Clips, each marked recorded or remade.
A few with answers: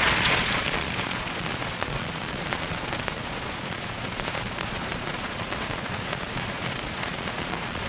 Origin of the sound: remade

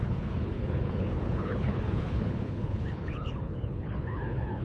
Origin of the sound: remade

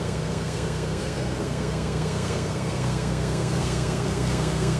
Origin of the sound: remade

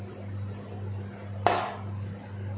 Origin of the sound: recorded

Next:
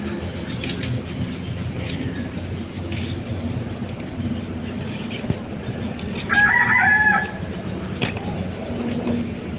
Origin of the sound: recorded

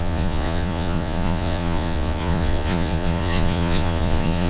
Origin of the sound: remade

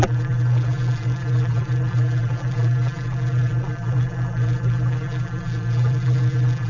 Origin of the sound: remade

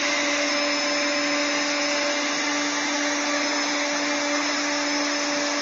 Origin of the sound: recorded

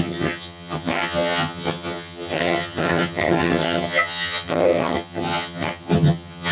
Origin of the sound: remade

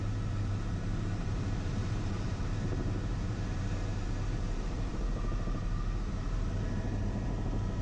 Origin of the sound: remade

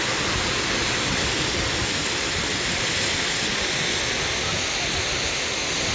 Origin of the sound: recorded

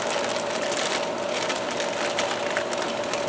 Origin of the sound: recorded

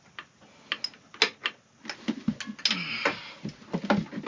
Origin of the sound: recorded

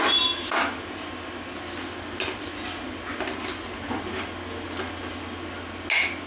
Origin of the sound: recorded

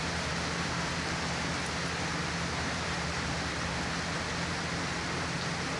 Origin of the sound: recorded